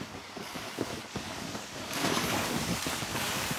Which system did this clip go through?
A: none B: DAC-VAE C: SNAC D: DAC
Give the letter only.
D